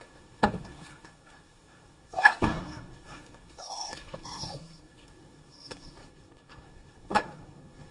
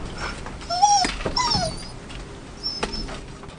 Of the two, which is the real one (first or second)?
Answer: second